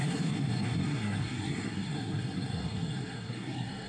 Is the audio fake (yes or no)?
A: yes